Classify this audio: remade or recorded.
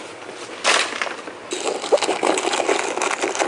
recorded